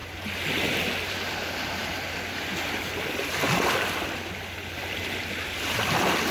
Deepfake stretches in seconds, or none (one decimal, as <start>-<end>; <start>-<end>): 1.1-1.8; 2.8-6.3